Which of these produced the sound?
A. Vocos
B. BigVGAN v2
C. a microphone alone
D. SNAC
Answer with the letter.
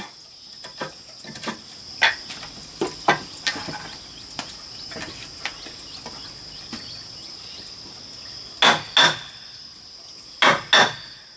C